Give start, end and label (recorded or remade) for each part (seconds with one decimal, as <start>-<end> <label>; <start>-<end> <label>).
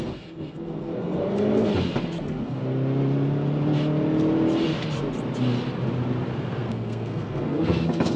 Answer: 0.0-1.7 remade; 1.7-2.2 recorded; 2.2-2.6 remade; 2.6-6.3 recorded; 6.3-8.2 remade